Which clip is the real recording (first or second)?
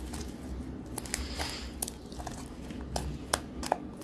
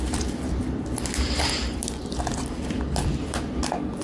first